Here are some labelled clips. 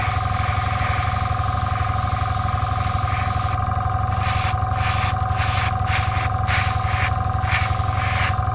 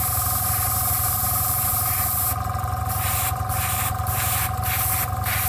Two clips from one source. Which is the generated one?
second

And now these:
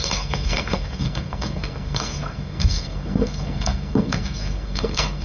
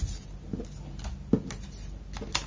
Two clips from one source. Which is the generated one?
first